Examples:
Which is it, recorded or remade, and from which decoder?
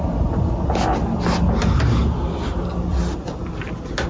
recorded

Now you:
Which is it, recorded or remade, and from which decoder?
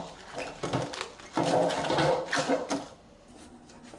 recorded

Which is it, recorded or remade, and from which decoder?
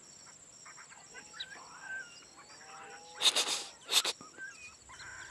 recorded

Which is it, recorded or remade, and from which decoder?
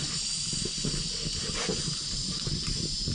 recorded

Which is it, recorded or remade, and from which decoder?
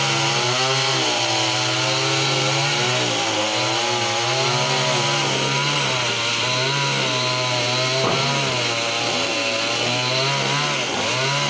recorded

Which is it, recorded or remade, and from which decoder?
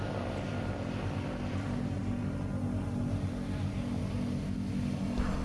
recorded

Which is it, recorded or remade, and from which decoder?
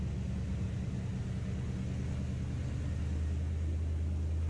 recorded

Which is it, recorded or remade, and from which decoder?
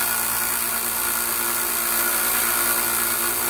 recorded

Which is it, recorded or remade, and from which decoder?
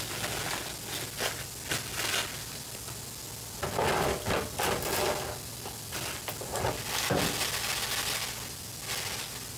recorded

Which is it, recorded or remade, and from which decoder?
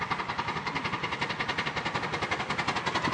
recorded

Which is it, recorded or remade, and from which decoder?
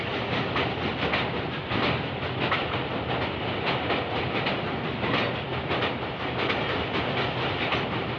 recorded